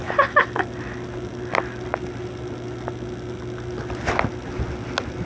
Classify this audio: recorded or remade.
recorded